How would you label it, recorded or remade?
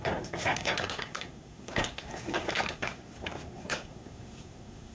remade